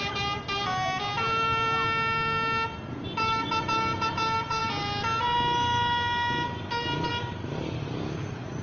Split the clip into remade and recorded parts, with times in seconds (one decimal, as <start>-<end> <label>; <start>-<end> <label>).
0.0-8.6 recorded